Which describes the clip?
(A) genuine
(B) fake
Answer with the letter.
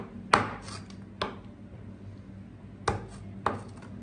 A